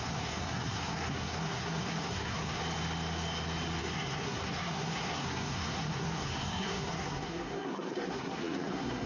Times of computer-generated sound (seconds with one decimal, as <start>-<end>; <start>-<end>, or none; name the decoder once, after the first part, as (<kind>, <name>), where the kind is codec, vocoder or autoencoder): 0.0-2.6 (codec, SNAC); 3.8-9.1